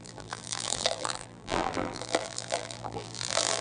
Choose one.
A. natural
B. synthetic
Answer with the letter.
B